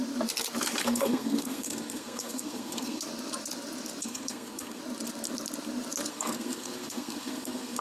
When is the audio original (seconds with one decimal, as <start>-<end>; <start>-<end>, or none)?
0.0-0.8; 3.0-4.0; 4.8-6.1